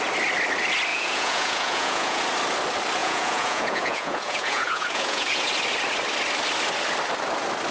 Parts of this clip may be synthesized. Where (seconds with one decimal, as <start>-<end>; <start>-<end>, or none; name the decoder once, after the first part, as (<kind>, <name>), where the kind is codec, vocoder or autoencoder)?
0.9-2.2 (vocoder, Vocos); 3.0-5.5

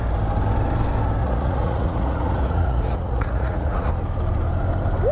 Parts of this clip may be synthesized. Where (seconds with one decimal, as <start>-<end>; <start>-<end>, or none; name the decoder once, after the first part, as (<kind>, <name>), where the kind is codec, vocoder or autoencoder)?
1.2-3.9 (vocoder, Vocos)

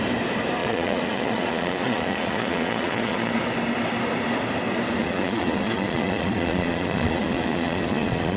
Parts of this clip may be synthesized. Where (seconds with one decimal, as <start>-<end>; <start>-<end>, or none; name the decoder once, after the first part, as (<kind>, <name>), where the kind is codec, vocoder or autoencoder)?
0.6-3.4 (vocoder, Vocos); 5.0-8.4

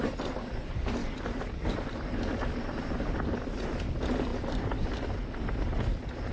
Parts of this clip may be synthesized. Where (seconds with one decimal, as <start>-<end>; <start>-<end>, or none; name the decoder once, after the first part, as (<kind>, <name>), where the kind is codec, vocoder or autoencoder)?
none

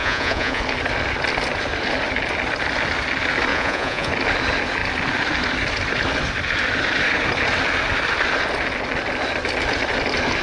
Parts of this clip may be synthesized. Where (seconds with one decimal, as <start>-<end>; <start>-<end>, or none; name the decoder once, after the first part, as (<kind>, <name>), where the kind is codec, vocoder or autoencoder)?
0.0-0.6 (vocoder, Vocos); 3.5-4.1

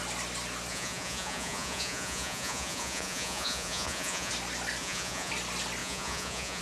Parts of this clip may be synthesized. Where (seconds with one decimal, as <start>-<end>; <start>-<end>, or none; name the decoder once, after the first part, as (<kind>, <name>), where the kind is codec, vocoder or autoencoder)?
0.7-4.3 (vocoder, Vocos); 4.8-5.3; 5.8-6.6

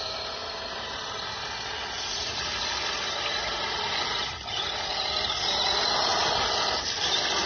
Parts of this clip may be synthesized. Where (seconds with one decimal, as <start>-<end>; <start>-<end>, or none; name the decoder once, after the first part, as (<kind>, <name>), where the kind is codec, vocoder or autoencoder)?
none

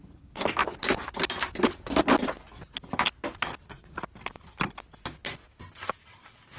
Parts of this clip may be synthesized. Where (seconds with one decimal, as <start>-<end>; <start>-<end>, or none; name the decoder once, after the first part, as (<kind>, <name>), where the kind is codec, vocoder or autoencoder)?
none